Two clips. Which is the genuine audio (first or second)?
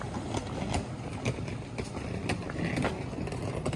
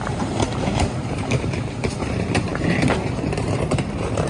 first